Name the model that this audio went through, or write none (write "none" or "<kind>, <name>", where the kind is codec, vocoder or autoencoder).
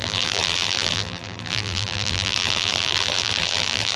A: vocoder, BigVGAN v2